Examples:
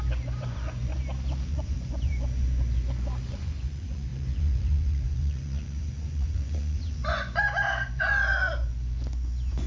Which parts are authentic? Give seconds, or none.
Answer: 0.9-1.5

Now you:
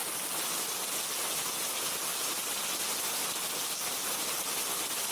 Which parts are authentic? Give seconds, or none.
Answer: 0.0-5.1

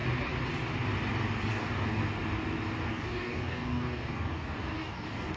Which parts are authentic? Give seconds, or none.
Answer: 0.0-1.5; 2.0-2.9

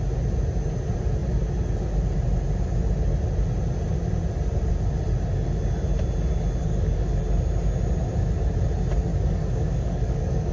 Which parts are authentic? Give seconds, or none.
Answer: 0.0-6.6; 7.2-9.1

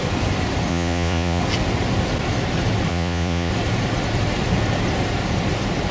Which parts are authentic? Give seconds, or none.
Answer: 0.0-0.7; 1.4-2.9; 3.5-5.9